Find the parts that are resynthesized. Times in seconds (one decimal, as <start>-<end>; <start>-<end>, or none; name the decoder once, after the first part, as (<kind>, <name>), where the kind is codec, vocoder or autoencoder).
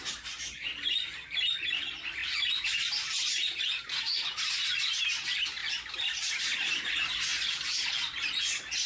none